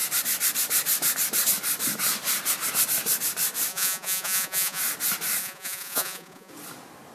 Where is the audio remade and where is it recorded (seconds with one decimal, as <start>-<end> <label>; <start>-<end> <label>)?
0.0-3.7 recorded; 3.7-4.8 remade; 4.8-5.4 recorded; 5.4-6.5 remade; 6.5-7.1 recorded